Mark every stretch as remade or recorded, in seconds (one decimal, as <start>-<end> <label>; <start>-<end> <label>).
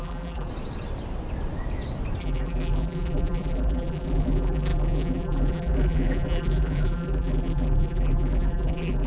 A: 0.0-0.5 remade; 0.5-2.2 recorded; 2.2-9.1 remade